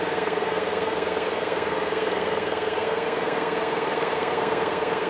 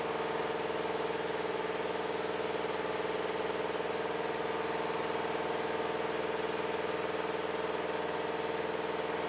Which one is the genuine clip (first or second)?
second